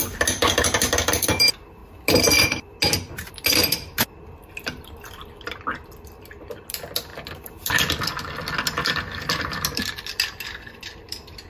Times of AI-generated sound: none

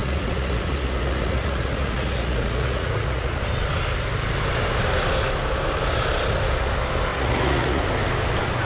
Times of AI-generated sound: 0.0-3.4 (vocoder, Vocos); 7.1-7.8

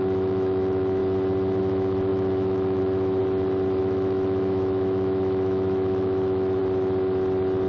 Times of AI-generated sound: 0.0-1.0 (autoencoder, DAC-VAE); 1.6-3.2; 3.8-6.6

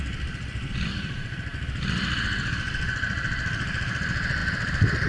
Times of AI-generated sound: none

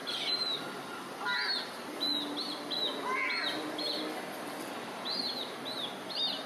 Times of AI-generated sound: 0.0-0.6 (vocoder, BigVGAN v2)